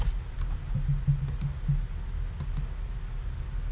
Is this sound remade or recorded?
recorded